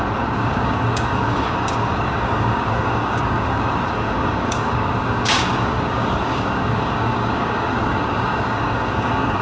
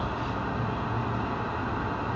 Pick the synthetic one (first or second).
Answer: first